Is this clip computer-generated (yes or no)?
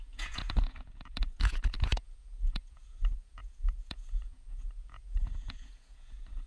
yes